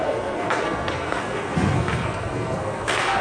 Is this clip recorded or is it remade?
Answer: remade